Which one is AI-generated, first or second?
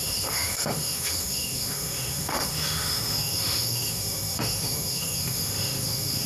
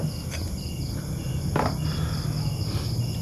first